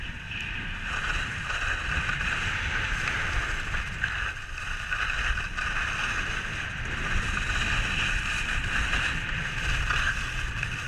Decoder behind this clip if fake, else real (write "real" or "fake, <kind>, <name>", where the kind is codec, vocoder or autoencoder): real